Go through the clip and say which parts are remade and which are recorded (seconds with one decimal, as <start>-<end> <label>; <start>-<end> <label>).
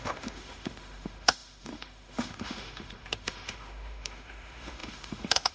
0.0-5.5 remade